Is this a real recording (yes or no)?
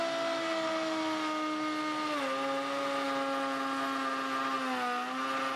yes